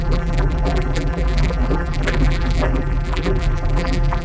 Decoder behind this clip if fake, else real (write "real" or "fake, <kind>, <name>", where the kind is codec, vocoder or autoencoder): fake, vocoder, BigVGAN v2